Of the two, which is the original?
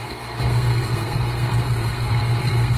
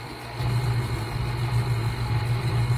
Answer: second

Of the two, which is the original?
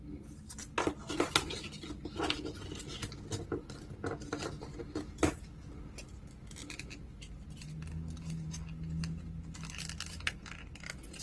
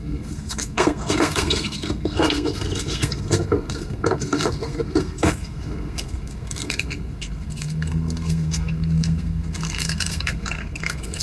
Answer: first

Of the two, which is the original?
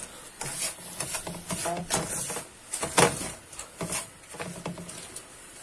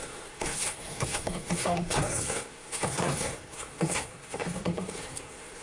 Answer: first